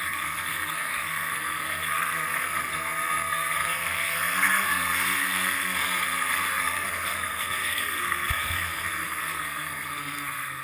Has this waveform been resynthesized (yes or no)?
yes